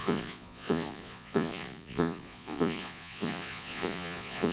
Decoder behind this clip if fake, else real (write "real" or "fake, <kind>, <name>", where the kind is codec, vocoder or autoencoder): fake, vocoder, Vocos